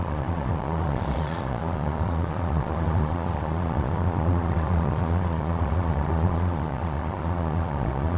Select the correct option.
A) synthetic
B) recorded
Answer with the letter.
A